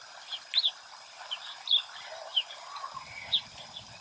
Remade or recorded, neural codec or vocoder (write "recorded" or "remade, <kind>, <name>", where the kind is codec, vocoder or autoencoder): recorded